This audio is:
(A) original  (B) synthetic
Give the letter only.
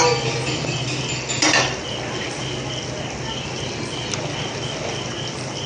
A